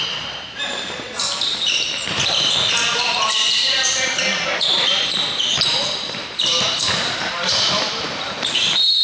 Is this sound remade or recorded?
remade